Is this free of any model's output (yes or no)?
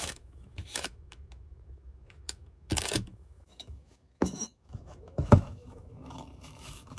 no